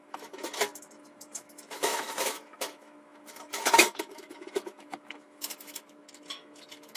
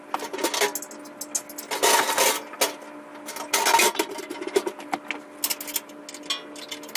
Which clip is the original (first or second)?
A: second